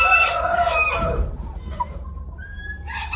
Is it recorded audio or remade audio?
remade